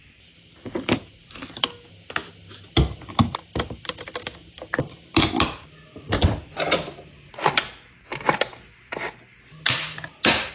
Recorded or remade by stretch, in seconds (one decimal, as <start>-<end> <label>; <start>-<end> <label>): 0.0-10.5 recorded